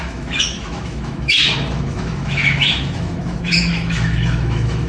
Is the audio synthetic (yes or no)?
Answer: yes